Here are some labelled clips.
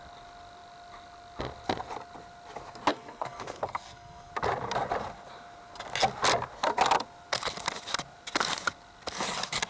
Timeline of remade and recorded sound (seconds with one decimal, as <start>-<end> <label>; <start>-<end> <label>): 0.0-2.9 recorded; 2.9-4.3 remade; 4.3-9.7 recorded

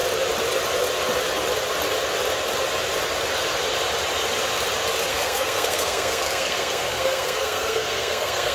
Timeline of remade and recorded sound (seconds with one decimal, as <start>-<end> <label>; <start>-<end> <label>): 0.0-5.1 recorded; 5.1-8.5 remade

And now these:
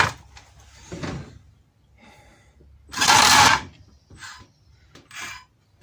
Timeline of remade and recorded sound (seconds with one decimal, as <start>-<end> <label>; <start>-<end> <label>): 0.0-5.8 recorded

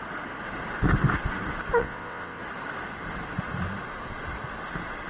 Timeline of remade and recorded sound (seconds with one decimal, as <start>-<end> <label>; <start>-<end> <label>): 0.0-1.8 recorded; 1.8-2.4 remade; 2.4-5.1 recorded

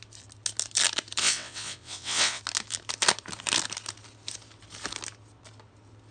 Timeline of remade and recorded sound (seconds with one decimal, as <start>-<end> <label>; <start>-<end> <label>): 0.0-1.2 recorded; 1.2-2.4 remade; 2.4-6.1 recorded

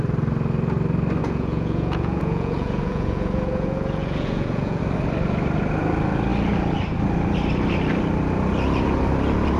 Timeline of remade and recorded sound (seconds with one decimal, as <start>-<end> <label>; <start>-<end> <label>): 0.0-1.2 recorded; 1.2-4.8 remade; 4.8-9.6 recorded

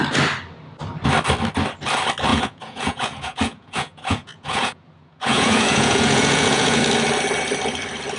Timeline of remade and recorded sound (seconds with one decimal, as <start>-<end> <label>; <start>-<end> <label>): 0.0-2.3 recorded; 2.3-6.8 remade; 6.8-8.2 recorded

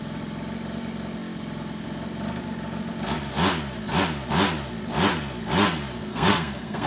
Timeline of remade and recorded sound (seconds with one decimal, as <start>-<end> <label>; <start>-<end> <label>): 0.0-6.1 recorded; 6.1-6.9 remade